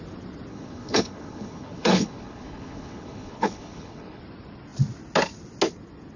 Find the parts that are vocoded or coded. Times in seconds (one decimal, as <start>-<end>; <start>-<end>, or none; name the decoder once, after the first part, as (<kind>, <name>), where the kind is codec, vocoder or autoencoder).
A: 0.5-4.2 (codec, HILCodec)